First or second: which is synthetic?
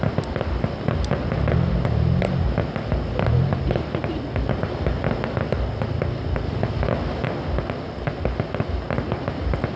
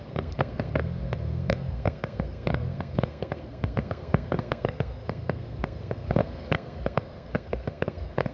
second